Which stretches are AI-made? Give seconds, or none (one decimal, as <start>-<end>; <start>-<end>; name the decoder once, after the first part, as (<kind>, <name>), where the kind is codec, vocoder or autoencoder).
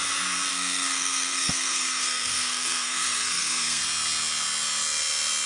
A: 0.5-3.8 (codec, SNAC)